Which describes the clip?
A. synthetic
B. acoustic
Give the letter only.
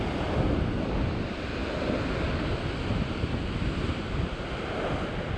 B